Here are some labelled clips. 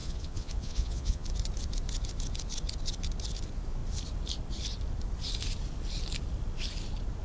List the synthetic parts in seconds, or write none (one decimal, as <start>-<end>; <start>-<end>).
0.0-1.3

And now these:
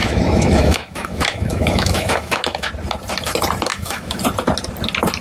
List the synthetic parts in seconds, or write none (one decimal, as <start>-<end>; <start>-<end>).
0.0-2.7; 3.7-4.2

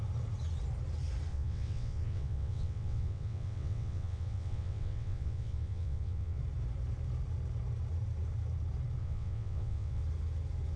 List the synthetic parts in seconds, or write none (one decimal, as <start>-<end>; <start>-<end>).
1.3-6.4; 9.0-10.0

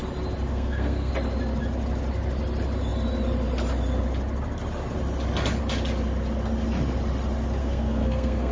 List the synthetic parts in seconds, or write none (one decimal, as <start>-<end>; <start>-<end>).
0.5-1.1; 7.6-8.5